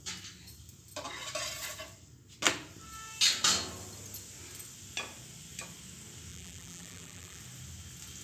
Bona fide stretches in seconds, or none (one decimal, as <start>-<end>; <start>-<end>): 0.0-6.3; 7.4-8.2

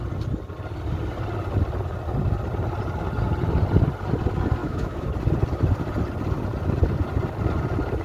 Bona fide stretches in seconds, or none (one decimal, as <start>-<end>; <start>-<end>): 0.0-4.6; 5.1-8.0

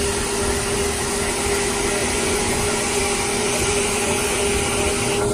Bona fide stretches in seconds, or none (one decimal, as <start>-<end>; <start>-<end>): 0.0-2.0; 3.0-3.4; 4.4-5.3

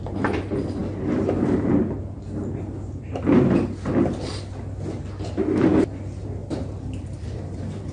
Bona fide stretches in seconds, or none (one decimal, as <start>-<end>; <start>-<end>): 0.0-6.4